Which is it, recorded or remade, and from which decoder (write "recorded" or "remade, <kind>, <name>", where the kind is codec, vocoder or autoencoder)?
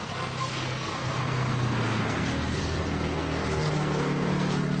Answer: remade, codec, SNAC